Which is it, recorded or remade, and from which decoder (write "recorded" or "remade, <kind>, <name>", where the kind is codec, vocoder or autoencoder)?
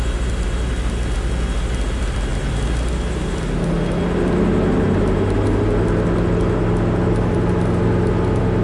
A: recorded